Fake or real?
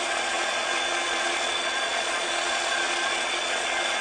fake